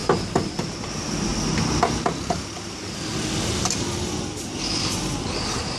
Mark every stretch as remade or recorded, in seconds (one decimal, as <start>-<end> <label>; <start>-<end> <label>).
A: 0.0-0.5 recorded; 0.5-1.3 remade; 1.3-4.8 recorded; 4.8-5.8 remade